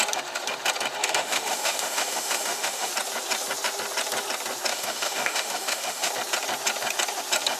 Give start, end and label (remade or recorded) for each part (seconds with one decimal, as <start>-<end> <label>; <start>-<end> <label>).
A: 0.0-1.0 recorded; 1.0-2.9 remade; 2.9-4.7 recorded; 4.7-6.1 remade; 6.1-7.6 recorded